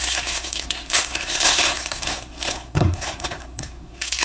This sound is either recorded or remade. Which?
remade